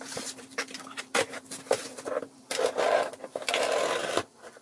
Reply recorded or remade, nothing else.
remade